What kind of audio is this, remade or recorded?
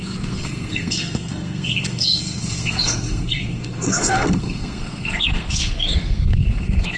remade